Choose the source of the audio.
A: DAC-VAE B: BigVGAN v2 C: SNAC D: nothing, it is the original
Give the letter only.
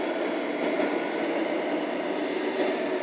D